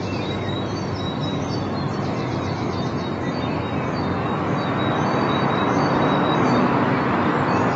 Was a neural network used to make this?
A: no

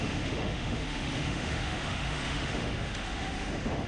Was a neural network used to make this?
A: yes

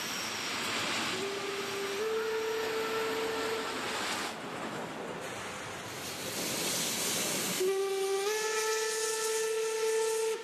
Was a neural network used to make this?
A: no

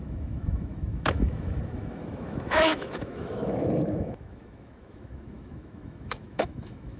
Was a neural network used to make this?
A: yes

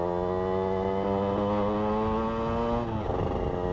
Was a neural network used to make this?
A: no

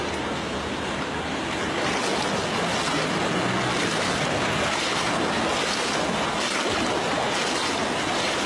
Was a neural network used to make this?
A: no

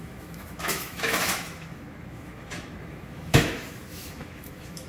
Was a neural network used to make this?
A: yes